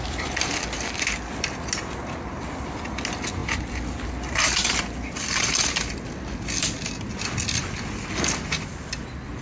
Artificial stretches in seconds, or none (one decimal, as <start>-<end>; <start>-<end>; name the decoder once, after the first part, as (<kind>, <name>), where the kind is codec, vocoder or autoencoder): none